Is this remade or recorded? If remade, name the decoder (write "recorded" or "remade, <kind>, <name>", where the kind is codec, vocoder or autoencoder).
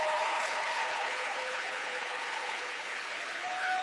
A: remade, codec, HILCodec